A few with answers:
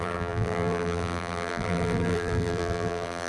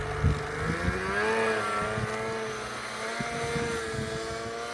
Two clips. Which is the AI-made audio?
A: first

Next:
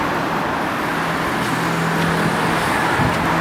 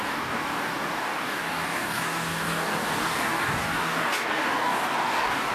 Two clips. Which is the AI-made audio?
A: second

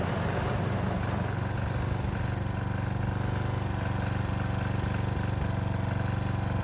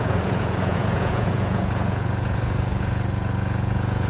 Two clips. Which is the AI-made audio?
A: second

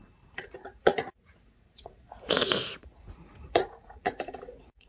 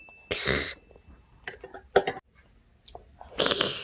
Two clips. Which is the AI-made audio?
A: first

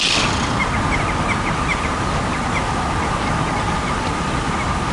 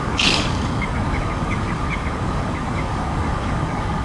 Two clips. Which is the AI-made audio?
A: second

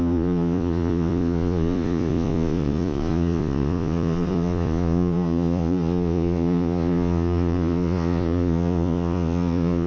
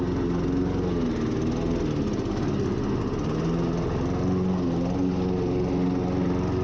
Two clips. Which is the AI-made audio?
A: first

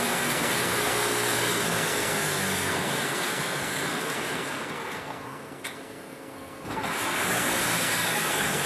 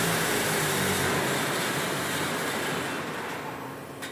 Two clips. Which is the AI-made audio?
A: first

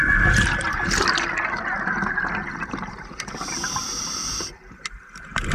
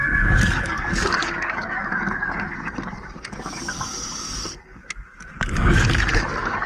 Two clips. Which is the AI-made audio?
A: second